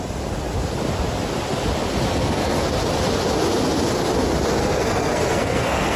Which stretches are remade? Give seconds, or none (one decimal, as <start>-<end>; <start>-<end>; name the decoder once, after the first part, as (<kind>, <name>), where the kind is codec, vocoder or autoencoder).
2.1-2.7 (codec, SNAC); 4.6-6.0